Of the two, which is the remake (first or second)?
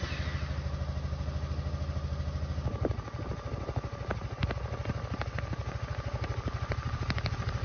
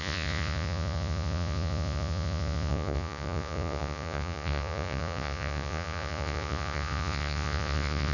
second